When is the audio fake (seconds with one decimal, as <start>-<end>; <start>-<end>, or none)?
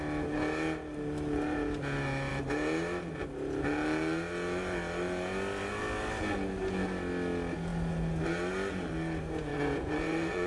9.5-10.5